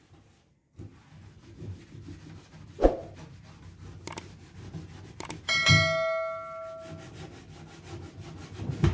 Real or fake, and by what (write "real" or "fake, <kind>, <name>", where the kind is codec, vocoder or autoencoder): real